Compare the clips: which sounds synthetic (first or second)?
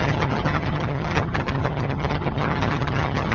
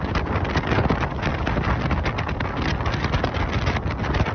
first